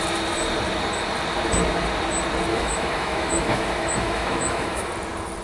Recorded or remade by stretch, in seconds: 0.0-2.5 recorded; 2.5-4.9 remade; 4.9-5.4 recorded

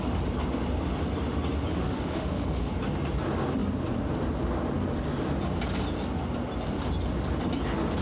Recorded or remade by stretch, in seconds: 0.0-1.7 recorded; 1.7-2.7 remade; 2.7-8.0 recorded

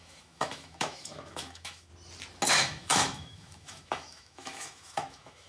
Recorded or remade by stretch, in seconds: 0.0-1.9 remade; 1.9-2.5 recorded; 2.5-5.5 remade

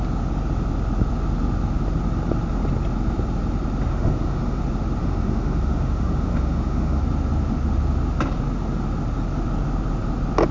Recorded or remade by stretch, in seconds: 0.0-3.9 recorded; 3.9-4.6 remade; 4.6-5.0 recorded; 5.0-7.0 remade; 7.0-10.5 recorded

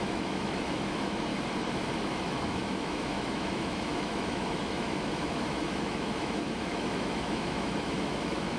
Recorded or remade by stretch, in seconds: 0.0-1.3 remade; 1.3-2.0 recorded; 2.0-8.6 remade

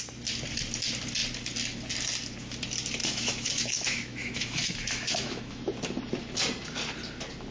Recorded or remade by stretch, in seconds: 0.0-3.0 recorded; 3.0-5.6 remade; 5.6-7.5 recorded

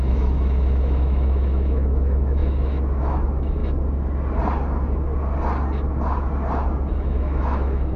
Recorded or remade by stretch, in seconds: 0.0-3.6 remade; 3.6-6.9 recorded; 6.9-8.0 remade

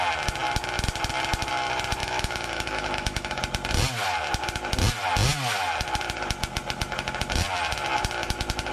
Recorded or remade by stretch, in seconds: 0.0-2.0 recorded; 2.0-3.4 remade; 3.4-8.7 recorded